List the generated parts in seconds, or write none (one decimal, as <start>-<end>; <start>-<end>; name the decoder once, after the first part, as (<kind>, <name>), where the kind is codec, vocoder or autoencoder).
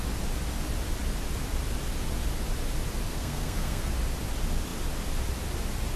3.1-3.9 (codec, SNAC)